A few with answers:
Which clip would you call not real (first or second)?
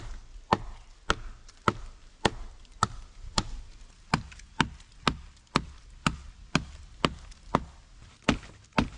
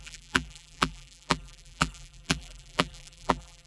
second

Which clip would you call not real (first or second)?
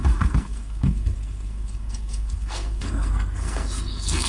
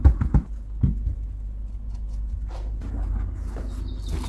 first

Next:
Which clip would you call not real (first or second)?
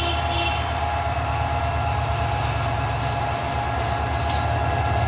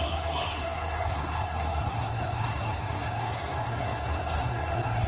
second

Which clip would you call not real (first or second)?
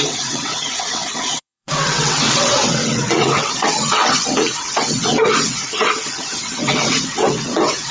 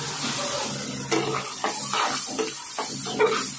first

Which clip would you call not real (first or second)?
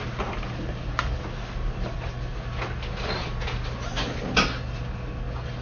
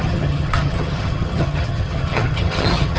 second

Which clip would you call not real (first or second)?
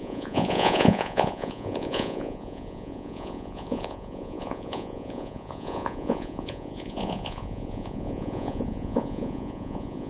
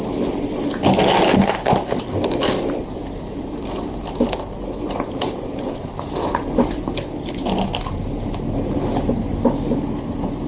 first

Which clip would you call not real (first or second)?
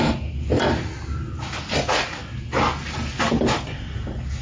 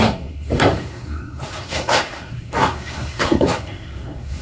second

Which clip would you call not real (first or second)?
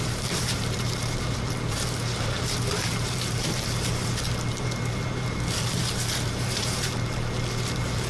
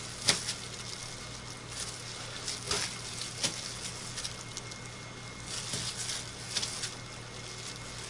first